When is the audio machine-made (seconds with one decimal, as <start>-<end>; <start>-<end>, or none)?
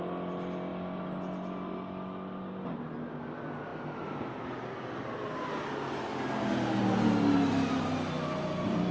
none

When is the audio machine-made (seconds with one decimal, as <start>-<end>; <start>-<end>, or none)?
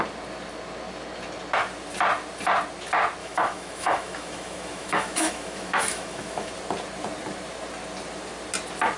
3.2-6.5